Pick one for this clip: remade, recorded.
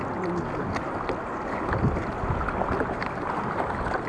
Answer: recorded